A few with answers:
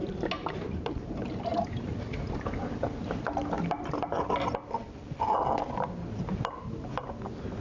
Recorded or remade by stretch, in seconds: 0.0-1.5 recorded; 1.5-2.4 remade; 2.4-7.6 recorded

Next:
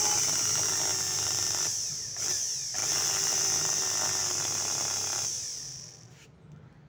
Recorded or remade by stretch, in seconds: 0.0-0.9 recorded; 0.9-1.9 remade; 1.9-6.9 recorded

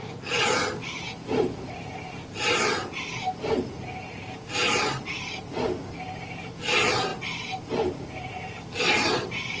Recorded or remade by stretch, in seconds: 0.0-9.6 recorded